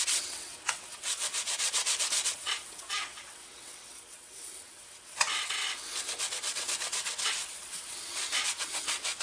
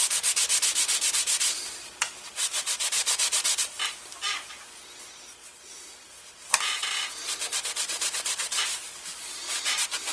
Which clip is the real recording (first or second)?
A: second